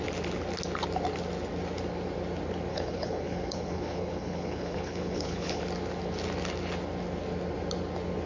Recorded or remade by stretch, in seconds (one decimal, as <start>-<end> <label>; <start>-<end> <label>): 0.0-2.7 recorded; 2.7-5.6 remade; 5.6-8.3 recorded